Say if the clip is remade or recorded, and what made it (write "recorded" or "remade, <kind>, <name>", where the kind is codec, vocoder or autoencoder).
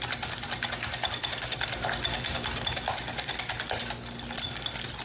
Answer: recorded